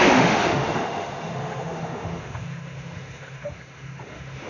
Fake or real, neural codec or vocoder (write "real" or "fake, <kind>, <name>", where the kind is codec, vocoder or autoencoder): fake, autoencoder, DAC-VAE